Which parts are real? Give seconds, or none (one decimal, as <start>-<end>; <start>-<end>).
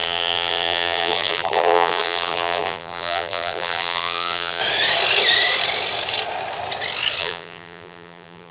4.6-7.2